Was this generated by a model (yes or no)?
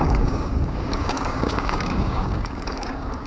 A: yes